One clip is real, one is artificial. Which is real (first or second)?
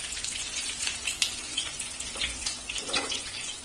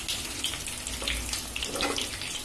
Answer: second